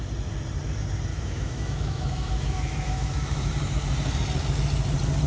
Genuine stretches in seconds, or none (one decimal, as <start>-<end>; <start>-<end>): 0.0-1.1; 3.5-5.3